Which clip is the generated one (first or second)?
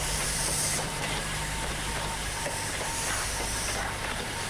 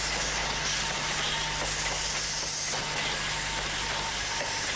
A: first